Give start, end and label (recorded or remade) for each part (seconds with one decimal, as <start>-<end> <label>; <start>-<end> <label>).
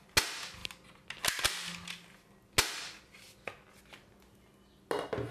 0.0-5.3 recorded